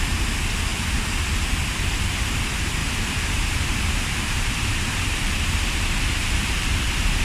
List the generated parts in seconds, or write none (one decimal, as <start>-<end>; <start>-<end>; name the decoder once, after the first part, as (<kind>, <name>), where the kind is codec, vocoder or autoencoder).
2.8-6.7 (vocoder, BigVGAN v2)